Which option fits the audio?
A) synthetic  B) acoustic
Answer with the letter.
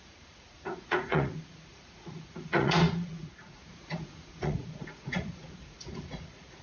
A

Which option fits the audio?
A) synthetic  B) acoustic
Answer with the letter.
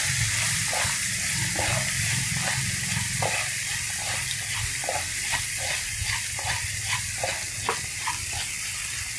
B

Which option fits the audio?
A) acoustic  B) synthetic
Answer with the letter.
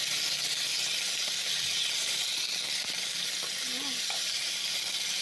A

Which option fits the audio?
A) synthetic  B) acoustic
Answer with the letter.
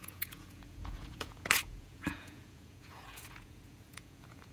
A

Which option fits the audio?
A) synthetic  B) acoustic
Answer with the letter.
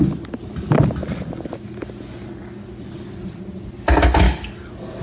B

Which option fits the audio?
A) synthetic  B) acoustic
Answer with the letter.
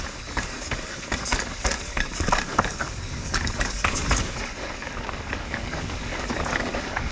A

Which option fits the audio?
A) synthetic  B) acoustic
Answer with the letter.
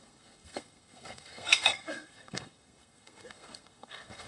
A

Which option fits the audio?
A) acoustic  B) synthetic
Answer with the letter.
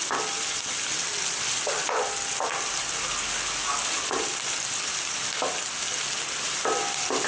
A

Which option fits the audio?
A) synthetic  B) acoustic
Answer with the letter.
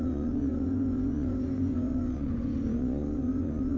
A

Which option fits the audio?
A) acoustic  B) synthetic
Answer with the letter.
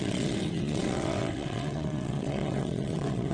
B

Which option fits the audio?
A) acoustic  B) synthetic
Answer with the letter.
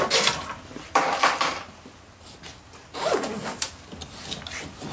A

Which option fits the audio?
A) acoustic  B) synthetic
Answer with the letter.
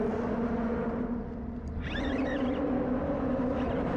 A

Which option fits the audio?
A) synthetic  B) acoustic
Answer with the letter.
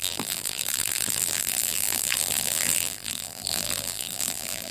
A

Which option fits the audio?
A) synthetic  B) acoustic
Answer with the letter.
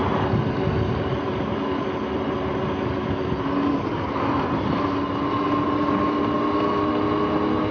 B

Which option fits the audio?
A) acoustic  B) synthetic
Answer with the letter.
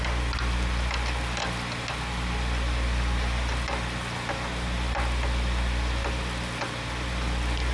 A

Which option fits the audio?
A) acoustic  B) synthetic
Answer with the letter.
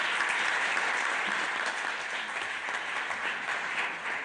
A